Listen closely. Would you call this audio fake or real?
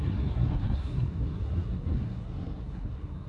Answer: fake